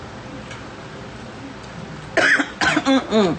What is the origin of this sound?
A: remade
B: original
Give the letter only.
B